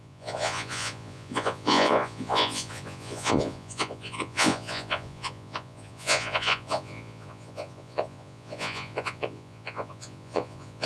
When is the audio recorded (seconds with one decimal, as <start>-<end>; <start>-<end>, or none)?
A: none